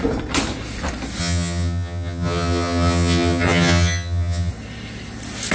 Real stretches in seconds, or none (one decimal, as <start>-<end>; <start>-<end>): 0.0-1.2; 4.5-5.5